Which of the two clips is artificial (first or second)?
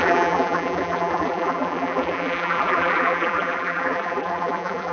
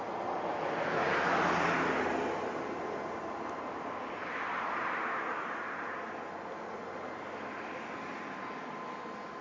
first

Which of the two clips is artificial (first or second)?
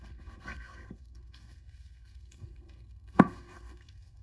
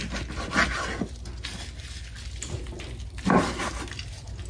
first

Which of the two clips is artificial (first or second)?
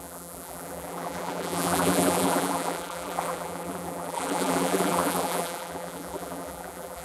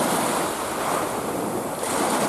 first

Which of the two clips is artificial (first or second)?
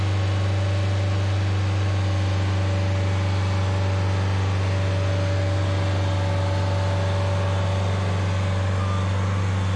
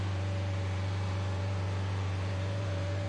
second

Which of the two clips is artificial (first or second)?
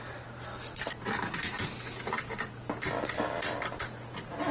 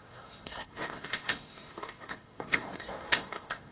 second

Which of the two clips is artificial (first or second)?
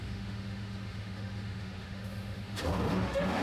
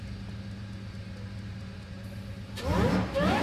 first